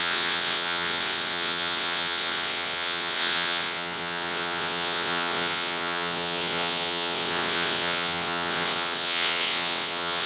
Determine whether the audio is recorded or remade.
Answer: remade